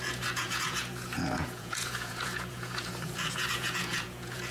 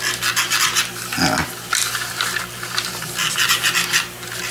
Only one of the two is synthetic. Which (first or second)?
first